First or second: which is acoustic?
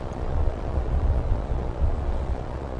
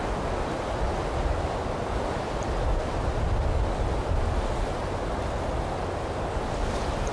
second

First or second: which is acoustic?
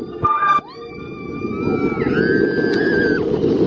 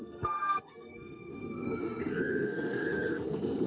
first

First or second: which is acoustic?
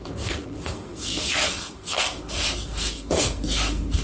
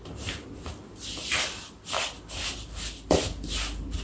second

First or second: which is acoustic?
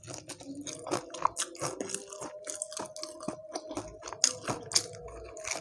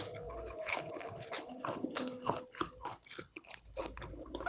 first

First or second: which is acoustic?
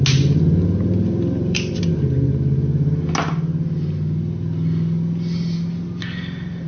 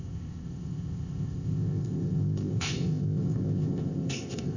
first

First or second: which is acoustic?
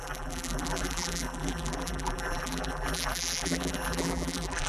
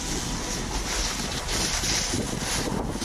second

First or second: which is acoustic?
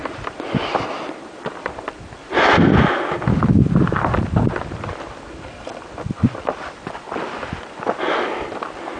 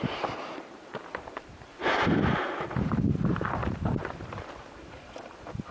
first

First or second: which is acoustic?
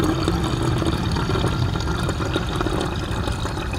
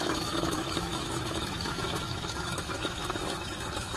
first